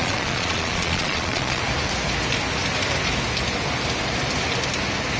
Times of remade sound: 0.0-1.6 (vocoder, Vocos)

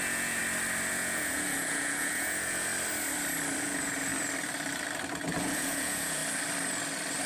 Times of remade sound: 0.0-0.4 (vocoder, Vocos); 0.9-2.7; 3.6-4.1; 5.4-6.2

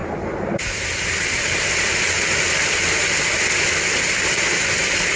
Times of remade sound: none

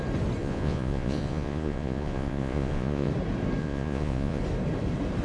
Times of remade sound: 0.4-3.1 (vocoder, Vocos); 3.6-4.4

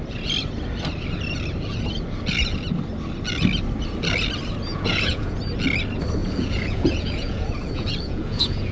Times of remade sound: 4.7-5.4 (vocoder, Vocos); 6.2-8.7